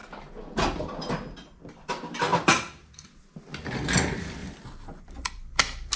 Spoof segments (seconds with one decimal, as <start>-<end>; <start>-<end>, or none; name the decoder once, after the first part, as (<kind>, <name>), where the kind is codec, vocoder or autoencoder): 2.3-3.2 (vocoder, BigVGAN v2); 4.4-6.0